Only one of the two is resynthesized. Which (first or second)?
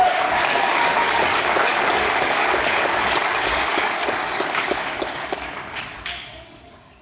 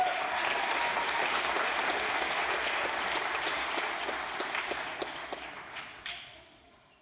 first